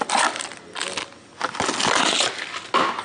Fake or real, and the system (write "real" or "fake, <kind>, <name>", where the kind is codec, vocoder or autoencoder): real